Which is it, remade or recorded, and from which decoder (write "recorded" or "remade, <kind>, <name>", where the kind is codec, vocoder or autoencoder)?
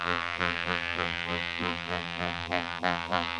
remade, vocoder, BigVGAN v2